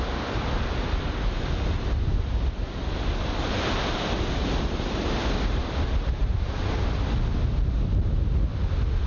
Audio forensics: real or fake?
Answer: real